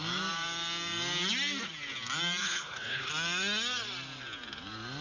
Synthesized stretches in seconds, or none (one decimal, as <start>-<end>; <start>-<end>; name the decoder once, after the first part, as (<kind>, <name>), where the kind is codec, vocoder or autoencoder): 2.4-3.1 (codec, HILCodec)